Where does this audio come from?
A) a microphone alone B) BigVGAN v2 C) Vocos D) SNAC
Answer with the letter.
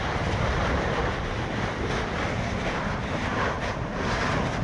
A